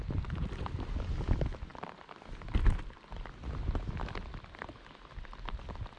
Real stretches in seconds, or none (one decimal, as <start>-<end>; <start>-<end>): 0.0-6.0